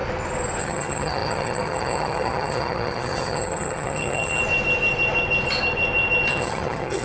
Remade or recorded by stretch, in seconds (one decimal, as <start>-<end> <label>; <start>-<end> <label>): 0.0-0.6 recorded; 0.6-4.4 remade; 4.4-6.3 recorded; 6.3-7.0 remade